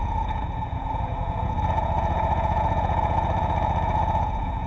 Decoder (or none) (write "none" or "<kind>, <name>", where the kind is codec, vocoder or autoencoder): vocoder, Vocos